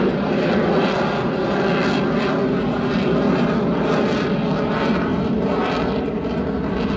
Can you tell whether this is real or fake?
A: real